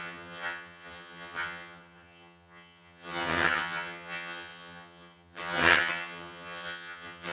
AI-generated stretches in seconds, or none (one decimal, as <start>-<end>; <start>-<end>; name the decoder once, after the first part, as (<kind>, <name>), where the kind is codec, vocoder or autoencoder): 0.0-7.3 (vocoder, HiFi-GAN)

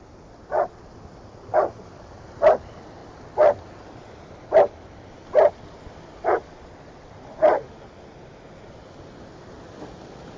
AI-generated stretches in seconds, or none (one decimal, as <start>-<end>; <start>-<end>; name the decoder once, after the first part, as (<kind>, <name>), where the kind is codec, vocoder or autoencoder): none